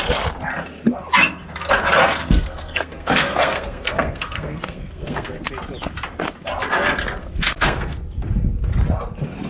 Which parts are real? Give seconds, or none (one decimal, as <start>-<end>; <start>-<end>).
0.0-2.2; 5.5-7.2; 8.0-9.5